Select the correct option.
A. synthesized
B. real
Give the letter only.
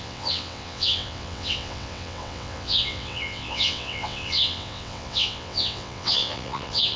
A